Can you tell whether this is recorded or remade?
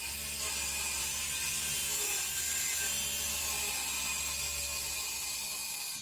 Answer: recorded